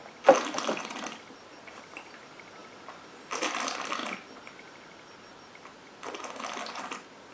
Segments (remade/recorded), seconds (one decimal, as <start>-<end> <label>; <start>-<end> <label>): 0.0-0.6 recorded; 0.6-4.0 remade; 4.0-6.7 recorded; 6.7-7.3 remade